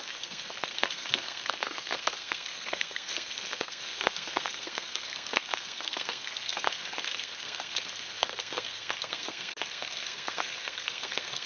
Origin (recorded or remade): remade